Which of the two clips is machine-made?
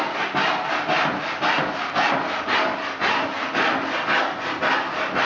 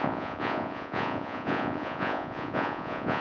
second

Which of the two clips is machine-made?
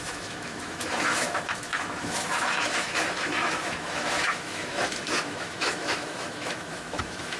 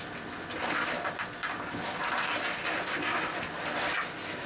first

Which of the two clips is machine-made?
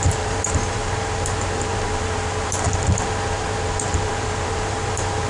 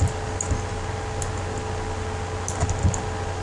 first